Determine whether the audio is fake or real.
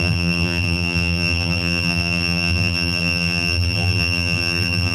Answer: fake